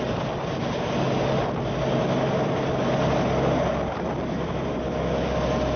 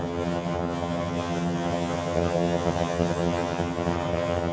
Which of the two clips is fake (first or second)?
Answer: second